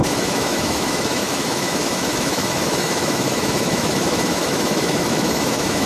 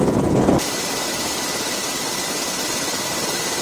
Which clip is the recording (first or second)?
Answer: second